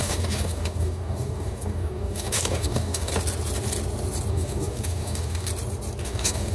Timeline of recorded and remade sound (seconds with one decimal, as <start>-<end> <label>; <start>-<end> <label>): 0.0-3.1 remade; 3.1-4.3 recorded; 4.3-5.5 remade; 5.5-6.0 recorded; 6.0-6.5 remade